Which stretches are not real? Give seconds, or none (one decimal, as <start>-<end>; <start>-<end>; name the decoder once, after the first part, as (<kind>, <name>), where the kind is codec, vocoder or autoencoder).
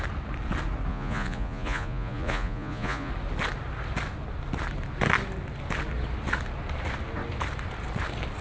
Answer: 0.9-3.1 (vocoder, Vocos)